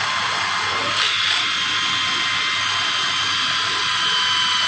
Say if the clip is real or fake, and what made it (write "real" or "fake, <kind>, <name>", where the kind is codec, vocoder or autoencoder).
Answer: real